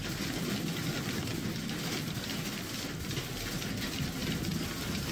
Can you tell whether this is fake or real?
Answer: real